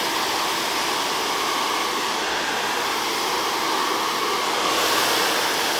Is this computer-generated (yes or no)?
no